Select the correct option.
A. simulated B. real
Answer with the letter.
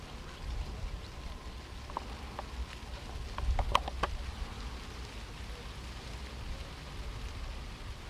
B